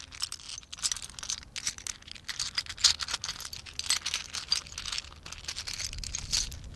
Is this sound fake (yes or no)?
no